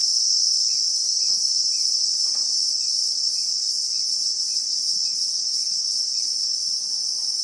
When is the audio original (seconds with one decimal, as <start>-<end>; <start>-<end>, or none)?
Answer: 4.6-5.6